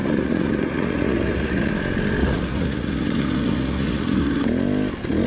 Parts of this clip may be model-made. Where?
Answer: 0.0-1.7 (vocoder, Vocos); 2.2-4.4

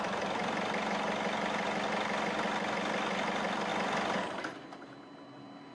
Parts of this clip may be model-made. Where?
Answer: none

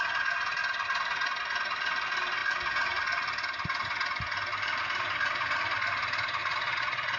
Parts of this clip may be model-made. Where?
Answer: 6.4-7.2 (vocoder, Vocos)

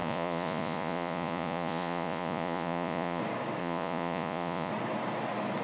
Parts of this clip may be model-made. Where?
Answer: 0.0-3.2 (vocoder, Vocos); 3.6-4.7

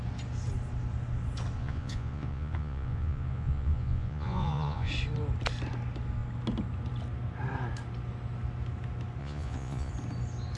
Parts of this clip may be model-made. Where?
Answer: 1.6-4.9 (vocoder, Vocos); 9.2-9.9

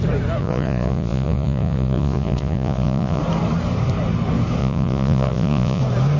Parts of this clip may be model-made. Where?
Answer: 0.4-3.2 (vocoder, Vocos); 4.6-5.8

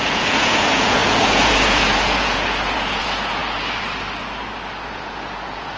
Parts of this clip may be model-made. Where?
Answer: 0.0-3.4 (vocoder, Vocos); 4.9-5.8

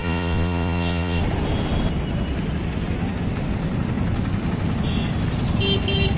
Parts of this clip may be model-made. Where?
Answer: 0.0-1.2 (vocoder, Vocos)